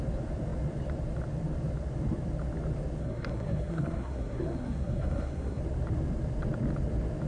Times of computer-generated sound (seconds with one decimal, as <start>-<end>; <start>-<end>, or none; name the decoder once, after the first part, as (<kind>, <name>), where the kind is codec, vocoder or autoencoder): 3.0-5.6 (codec, SNAC)